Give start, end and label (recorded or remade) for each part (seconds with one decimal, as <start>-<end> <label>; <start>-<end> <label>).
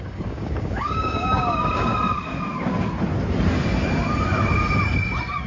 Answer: 0.0-1.9 remade; 1.9-5.5 recorded